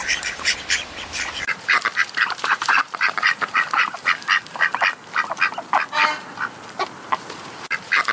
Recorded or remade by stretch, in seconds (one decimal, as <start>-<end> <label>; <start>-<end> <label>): 0.0-4.0 remade; 4.0-8.1 recorded